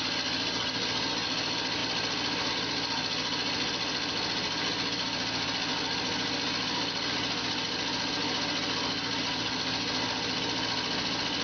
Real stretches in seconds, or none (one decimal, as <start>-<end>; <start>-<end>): 0.0-11.4